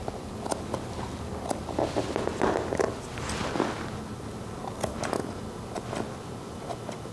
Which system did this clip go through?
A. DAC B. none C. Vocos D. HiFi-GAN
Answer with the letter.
B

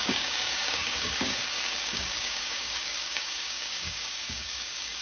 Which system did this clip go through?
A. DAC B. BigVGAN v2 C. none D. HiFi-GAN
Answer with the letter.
A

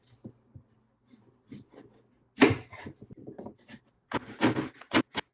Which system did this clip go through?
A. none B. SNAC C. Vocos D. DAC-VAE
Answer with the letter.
A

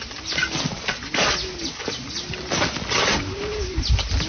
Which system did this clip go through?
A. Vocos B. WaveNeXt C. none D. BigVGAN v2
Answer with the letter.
C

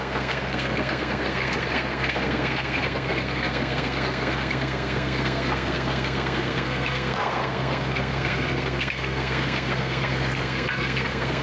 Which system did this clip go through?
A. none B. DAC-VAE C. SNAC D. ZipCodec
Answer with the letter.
C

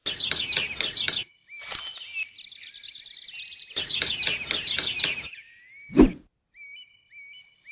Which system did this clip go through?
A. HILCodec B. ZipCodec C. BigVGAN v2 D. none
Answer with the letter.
D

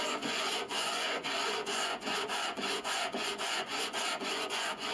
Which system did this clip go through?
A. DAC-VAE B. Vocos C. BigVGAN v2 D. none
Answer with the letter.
B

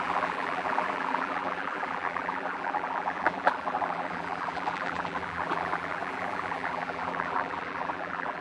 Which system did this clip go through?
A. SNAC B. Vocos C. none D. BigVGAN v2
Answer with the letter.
D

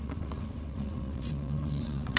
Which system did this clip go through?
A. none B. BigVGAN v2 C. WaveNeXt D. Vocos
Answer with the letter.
C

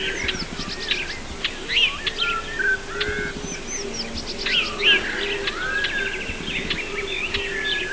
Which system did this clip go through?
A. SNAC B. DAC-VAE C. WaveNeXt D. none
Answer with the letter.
D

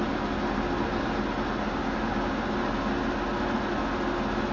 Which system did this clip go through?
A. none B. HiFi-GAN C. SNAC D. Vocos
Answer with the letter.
A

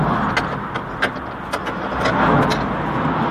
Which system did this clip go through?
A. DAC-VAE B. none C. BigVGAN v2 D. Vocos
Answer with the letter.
B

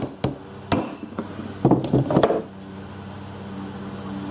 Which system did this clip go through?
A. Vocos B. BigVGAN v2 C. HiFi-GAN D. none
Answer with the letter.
D